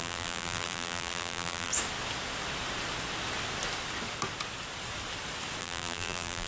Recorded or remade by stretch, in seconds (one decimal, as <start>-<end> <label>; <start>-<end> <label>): 0.0-1.7 remade; 1.7-5.6 recorded; 5.6-6.5 remade